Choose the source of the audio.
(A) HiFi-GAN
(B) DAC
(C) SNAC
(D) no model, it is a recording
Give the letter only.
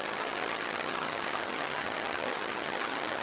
A